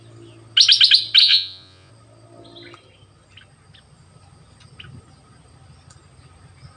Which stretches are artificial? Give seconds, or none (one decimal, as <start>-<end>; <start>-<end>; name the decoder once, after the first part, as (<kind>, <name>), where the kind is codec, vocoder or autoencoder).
1.2-1.9 (vocoder, Vocos)